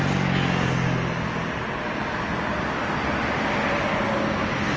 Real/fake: real